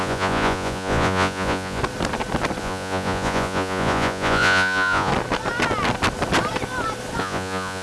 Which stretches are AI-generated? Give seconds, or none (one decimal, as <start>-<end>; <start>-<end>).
0.0-1.8; 2.6-5.1; 7.2-7.8